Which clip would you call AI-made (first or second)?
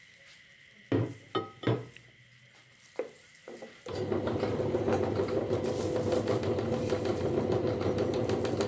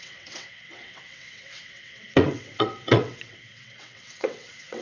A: second